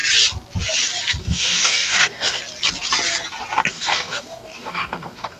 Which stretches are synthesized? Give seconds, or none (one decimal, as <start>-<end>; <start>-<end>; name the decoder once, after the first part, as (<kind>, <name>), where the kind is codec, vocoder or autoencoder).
1.2-2.4 (codec, DAC); 3.7-5.4

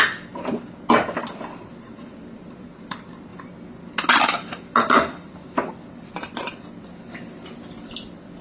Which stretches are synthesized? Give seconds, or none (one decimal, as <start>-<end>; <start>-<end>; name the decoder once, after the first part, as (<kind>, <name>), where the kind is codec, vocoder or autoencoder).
none

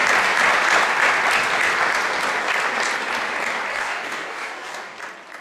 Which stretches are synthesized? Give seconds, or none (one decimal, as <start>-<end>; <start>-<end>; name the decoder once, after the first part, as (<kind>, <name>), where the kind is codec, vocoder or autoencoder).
3.7-5.0 (codec, DAC)

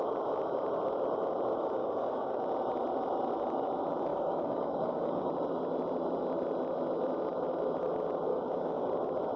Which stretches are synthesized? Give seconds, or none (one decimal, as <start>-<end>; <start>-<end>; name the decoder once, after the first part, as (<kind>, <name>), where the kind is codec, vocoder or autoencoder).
1.8-2.4 (codec, DAC); 4.1-5.3; 8.3-8.9

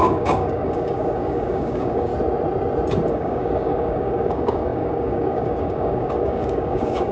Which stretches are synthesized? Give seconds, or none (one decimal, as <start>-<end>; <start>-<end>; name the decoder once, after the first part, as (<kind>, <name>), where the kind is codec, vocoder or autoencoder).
0.0-2.1 (codec, DAC); 3.1-7.1

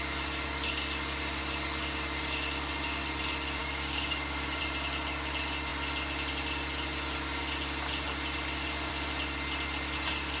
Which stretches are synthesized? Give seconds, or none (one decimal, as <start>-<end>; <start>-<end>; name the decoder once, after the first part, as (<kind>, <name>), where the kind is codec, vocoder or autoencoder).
3.6-4.6 (codec, DAC)

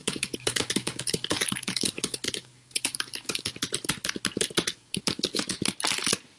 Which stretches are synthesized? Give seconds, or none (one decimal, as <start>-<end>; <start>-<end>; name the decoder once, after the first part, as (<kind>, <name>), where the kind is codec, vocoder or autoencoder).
0.0-3.5 (codec, DAC); 4.7-5.5